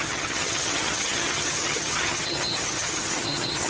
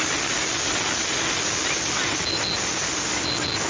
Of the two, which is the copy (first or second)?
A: first